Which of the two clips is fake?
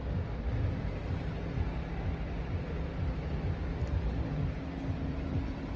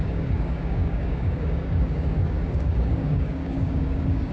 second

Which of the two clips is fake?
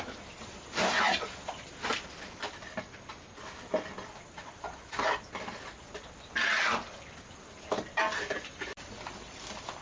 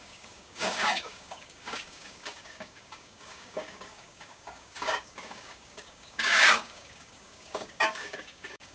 second